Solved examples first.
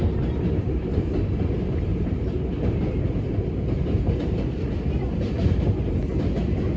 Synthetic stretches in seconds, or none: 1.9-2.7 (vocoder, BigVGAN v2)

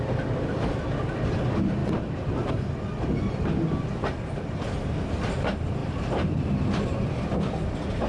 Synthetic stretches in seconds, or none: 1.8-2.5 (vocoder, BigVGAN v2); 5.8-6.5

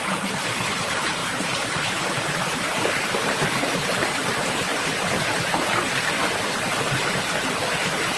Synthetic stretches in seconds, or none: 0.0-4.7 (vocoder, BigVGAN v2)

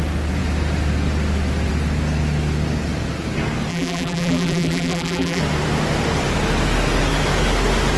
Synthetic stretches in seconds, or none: 3.7-5.4 (vocoder, BigVGAN v2)

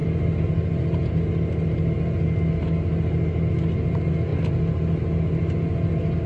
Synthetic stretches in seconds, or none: none

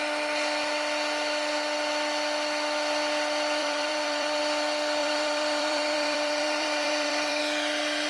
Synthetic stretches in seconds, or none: 3.6-4.4 (vocoder, BigVGAN v2); 5.0-7.4

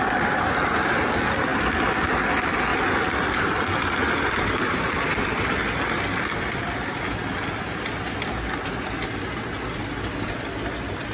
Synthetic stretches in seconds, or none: none